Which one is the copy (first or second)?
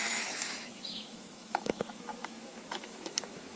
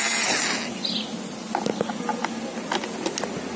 first